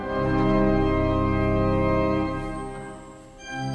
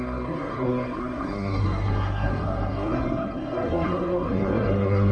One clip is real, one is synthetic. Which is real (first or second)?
first